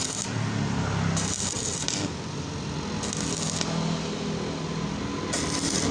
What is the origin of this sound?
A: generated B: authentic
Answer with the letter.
B